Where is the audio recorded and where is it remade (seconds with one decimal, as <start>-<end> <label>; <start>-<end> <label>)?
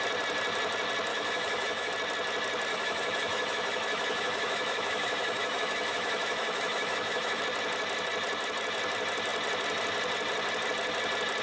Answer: 0.0-1.1 recorded; 1.1-1.9 remade; 1.9-2.7 recorded; 2.7-7.4 remade; 7.4-11.4 recorded